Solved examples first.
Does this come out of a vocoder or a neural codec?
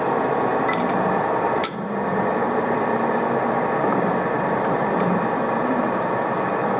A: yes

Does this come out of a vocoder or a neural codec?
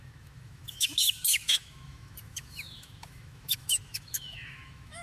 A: yes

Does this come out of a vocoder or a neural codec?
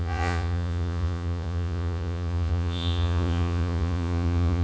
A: yes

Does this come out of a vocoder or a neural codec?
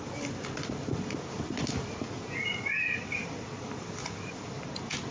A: no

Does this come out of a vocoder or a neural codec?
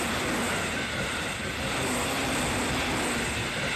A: no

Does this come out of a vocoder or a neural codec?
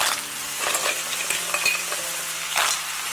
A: no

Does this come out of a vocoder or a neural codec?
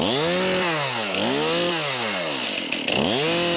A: no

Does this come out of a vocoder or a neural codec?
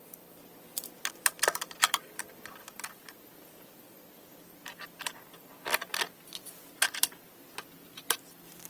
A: yes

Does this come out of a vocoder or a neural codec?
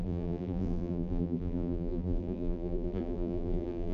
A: yes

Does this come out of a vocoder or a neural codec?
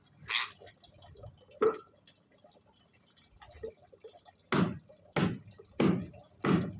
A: no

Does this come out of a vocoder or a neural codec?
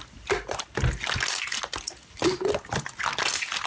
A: no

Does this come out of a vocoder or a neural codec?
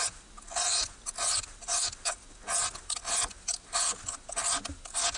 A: no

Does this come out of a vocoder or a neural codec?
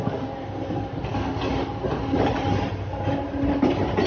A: no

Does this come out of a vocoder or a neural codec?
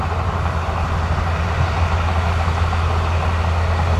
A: no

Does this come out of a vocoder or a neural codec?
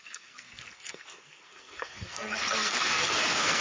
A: yes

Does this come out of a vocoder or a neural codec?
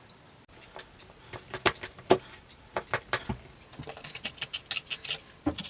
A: no